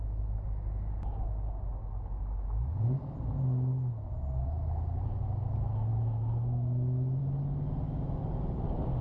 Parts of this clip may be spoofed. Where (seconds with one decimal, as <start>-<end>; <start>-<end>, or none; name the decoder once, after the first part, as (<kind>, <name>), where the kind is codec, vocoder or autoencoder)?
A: none